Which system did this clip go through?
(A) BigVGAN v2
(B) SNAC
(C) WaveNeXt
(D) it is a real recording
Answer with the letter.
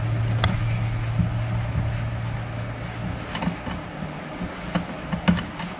D